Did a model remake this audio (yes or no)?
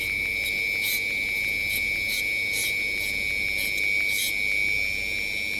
no